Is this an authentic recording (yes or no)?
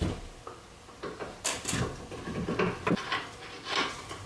yes